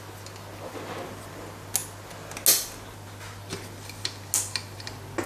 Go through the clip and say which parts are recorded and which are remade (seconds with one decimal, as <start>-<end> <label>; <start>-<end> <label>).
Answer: 0.0-5.3 recorded